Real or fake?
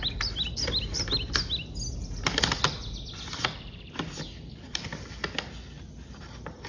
real